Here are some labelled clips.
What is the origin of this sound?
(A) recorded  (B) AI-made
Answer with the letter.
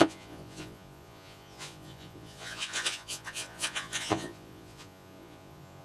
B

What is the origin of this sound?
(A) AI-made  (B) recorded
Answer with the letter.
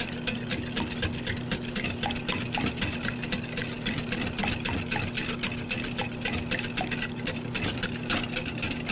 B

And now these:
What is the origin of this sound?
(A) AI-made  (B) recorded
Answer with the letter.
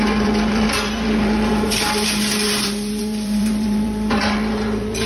A